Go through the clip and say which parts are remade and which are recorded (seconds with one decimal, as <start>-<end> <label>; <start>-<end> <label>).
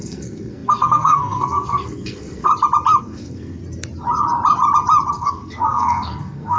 0.0-2.5 remade; 2.5-3.0 recorded; 3.0-3.6 remade; 3.6-5.1 recorded; 5.1-6.6 remade